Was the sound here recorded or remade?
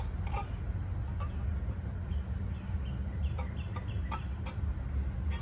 recorded